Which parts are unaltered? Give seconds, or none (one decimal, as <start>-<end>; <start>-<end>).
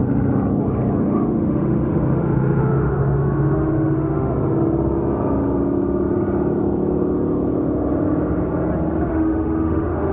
0.0-1.0; 4.3-9.1